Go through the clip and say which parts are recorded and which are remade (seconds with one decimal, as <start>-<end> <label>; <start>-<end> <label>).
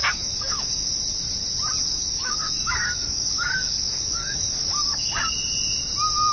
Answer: 0.0-0.9 remade; 0.9-1.8 recorded; 1.8-5.3 remade; 5.3-6.3 recorded